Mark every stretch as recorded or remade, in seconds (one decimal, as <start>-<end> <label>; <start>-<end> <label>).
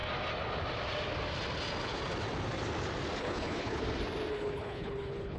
0.0-3.2 recorded; 3.2-3.8 remade; 3.8-4.3 recorded; 4.3-5.4 remade